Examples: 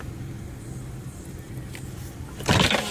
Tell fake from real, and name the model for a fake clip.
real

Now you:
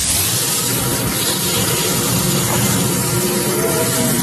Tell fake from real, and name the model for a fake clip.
real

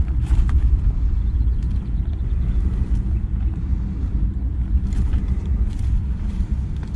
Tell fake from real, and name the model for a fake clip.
real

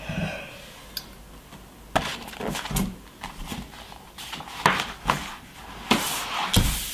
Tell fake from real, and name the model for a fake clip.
real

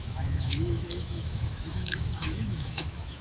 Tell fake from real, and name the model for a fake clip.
fake, autoencoder, DAC-VAE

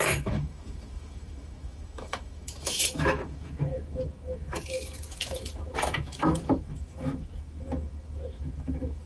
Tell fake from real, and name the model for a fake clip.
fake, autoencoder, DAC-VAE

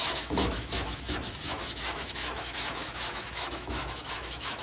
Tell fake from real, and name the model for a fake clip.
fake, autoencoder, DAC-VAE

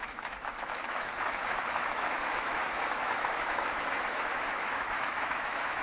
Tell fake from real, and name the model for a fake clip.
fake, autoencoder, DAC-VAE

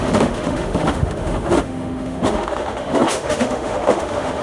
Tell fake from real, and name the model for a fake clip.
fake, autoencoder, DAC-VAE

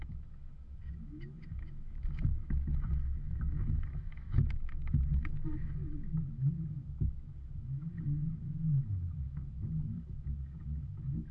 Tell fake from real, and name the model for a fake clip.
fake, autoencoder, DAC-VAE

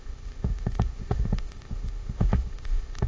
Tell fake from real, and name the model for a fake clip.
fake, autoencoder, DAC-VAE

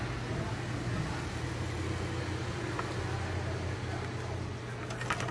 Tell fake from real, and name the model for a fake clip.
real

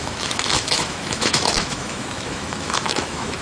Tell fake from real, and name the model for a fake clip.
fake, autoencoder, DAC-VAE